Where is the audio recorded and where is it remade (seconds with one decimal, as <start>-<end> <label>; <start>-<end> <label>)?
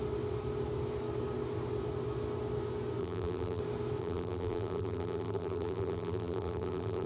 0.0-3.0 recorded; 3.0-3.6 remade; 3.6-4.0 recorded; 4.0-7.1 remade